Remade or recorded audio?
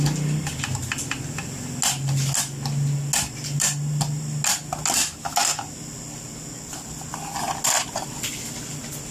recorded